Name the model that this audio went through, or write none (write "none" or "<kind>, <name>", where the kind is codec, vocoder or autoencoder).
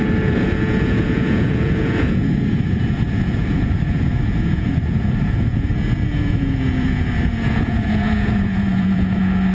vocoder, Vocos